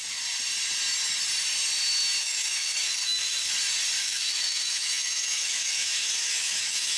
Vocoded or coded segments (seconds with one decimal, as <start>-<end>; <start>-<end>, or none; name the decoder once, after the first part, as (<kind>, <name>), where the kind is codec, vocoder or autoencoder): 2.2-3.5 (autoencoder, DAC-VAE); 4.0-7.0